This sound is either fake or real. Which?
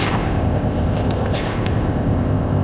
fake